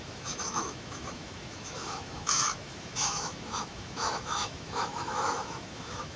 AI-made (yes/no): yes